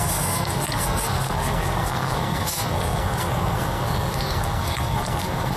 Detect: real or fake fake